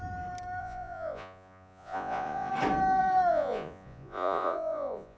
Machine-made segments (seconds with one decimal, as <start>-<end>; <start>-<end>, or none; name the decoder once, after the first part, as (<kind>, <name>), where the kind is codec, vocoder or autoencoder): 0.6-2.5 (vocoder, Vocos); 3.3-5.2